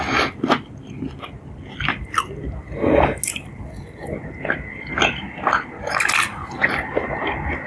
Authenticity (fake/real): real